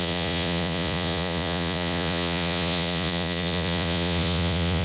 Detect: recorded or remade remade